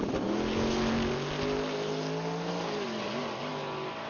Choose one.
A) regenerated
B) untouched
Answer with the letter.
B